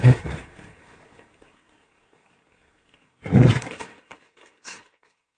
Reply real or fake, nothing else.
fake